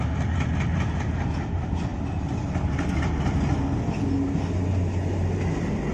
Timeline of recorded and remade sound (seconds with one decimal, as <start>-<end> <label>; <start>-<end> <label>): 0.0-5.9 recorded